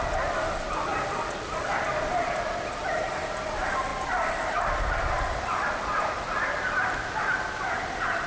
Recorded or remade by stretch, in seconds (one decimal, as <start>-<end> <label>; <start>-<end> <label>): 0.0-8.3 recorded